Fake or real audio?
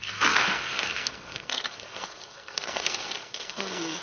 fake